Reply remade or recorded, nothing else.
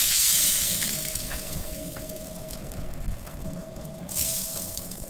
remade